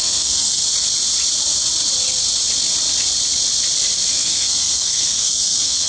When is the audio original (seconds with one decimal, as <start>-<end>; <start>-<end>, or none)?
0.6-4.1